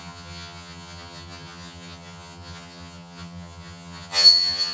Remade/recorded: remade